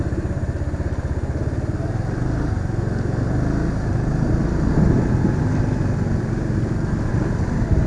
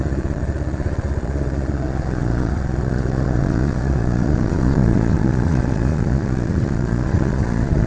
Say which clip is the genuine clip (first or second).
first